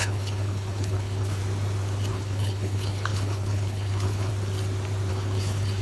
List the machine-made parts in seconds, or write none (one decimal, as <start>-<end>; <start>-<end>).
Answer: 0.0-1.4; 2.1-4.3; 5.1-5.8